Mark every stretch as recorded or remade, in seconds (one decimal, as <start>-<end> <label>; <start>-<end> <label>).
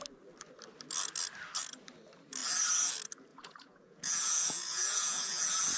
0.0-3.3 recorded; 3.3-5.8 remade